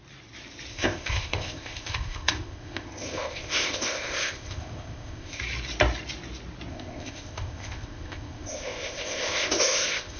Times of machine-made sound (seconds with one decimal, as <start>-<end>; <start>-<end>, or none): 0.7-5.4; 6.7-10.2